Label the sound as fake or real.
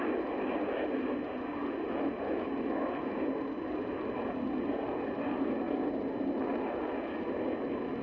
real